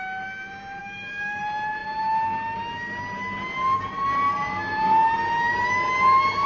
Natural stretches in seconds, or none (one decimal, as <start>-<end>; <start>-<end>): 0.0-0.8; 1.4-6.5